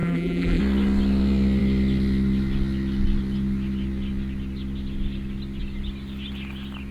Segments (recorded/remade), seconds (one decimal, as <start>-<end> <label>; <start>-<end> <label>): 0.0-0.6 remade; 0.6-6.9 recorded